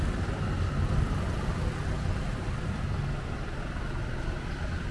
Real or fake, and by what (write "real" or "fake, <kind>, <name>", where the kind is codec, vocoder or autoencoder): real